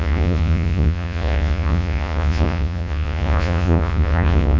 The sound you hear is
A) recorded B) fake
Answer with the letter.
B